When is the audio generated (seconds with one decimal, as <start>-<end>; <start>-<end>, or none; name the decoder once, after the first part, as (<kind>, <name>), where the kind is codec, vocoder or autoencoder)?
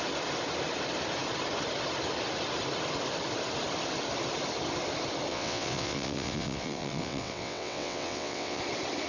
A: 5.3-8.6 (vocoder, WaveNeXt)